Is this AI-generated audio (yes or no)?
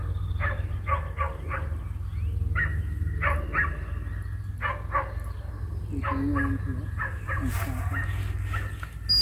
no